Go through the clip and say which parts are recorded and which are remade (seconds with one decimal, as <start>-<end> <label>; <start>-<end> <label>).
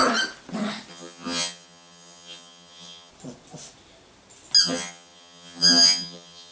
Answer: 0.0-0.9 recorded; 0.9-3.1 remade; 3.1-4.6 recorded; 4.6-6.5 remade